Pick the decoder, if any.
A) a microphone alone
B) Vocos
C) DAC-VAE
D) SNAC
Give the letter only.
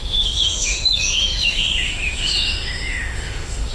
C